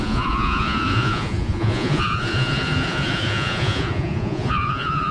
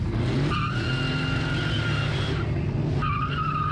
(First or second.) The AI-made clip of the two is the first